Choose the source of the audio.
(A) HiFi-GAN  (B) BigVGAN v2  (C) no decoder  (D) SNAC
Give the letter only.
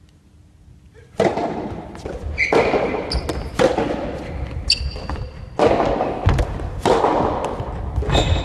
C